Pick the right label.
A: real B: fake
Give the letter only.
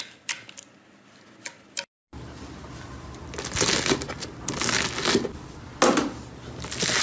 A